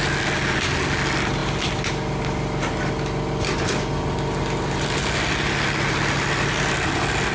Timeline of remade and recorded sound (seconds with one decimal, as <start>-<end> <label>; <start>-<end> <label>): 0.0-7.3 recorded